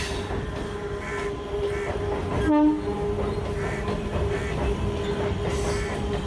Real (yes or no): yes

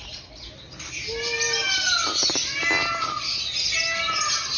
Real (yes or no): yes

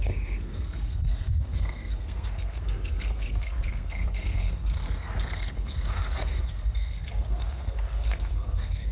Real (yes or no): no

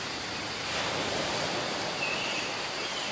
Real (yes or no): yes